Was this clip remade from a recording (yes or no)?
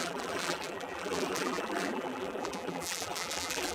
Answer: yes